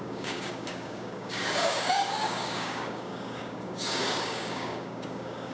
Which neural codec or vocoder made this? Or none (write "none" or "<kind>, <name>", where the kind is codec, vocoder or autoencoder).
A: codec, DAC